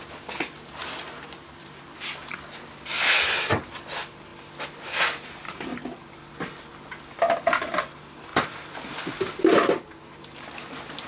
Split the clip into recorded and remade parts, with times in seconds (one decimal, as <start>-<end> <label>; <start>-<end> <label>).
0.0-0.8 recorded; 0.8-1.8 remade; 1.8-11.1 recorded